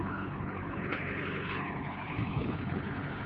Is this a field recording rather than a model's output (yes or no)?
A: no